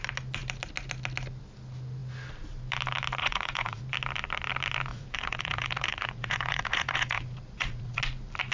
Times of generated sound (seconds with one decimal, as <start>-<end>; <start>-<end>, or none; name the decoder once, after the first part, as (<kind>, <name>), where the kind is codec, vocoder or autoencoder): 3.2-3.8 (vocoder, Vocos); 4.9-8.0